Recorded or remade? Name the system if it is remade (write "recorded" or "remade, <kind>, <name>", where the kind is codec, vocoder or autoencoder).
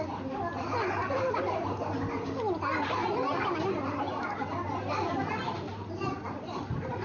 recorded